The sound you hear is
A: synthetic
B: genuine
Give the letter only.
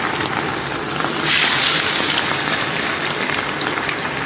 B